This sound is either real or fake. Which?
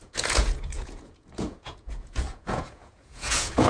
fake